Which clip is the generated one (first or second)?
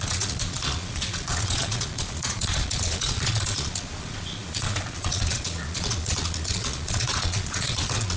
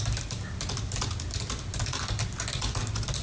first